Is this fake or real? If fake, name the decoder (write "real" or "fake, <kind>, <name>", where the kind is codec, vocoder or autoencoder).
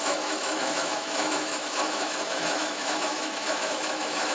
fake, autoencoder, DAC-VAE